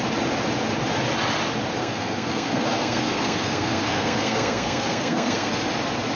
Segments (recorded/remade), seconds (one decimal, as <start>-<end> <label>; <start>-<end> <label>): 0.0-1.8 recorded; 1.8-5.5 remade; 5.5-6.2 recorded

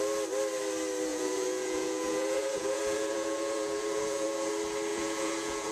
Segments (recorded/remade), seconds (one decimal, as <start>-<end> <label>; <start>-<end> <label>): 0.0-1.1 recorded; 1.1-4.5 remade; 4.5-4.9 recorded; 4.9-5.7 remade

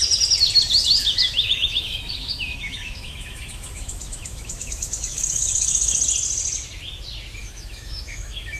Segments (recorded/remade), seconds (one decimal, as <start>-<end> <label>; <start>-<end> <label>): 0.0-1.0 recorded; 1.0-6.0 remade; 6.0-7.4 recorded; 7.4-8.6 remade

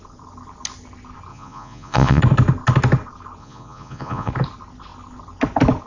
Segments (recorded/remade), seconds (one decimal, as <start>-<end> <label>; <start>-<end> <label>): 0.0-1.3 recorded; 1.3-2.2 remade; 2.2-3.4 recorded; 3.4-4.3 remade; 4.3-5.9 recorded

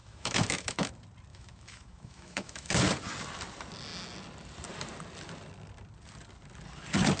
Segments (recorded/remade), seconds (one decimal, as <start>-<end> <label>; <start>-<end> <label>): 0.0-0.9 remade; 0.9-1.3 recorded; 1.3-2.8 remade; 2.8-7.2 recorded

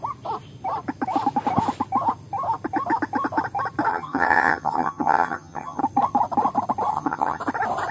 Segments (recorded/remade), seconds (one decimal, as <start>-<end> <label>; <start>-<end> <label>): 0.0-3.9 recorded; 3.9-5.8 remade; 5.8-6.9 recorded; 6.9-7.4 remade; 7.4-7.9 recorded

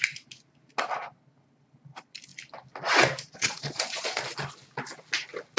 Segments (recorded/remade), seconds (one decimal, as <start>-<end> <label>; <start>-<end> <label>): 0.0-3.4 recorded; 3.4-4.2 remade; 4.2-5.6 recorded